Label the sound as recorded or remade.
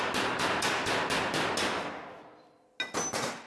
recorded